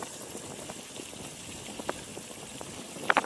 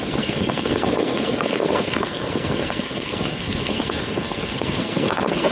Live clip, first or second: first